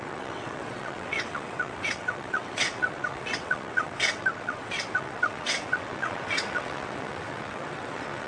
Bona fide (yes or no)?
no